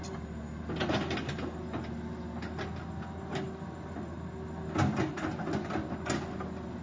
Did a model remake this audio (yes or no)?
no